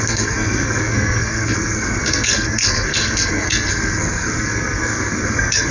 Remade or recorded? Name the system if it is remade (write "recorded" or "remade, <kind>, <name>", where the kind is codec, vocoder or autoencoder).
remade, codec, SNAC